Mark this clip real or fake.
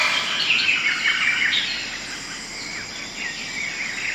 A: real